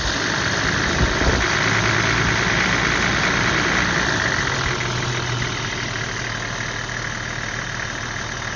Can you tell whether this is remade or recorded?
recorded